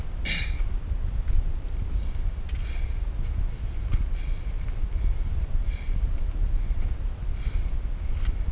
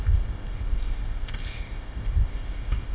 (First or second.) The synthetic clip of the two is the second